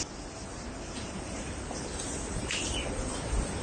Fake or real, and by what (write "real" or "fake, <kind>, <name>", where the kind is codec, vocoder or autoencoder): real